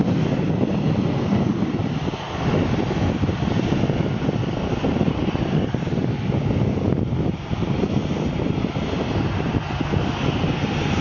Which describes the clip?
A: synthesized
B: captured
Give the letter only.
B